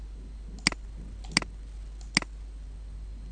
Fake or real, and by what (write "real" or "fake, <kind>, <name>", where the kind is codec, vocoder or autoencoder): real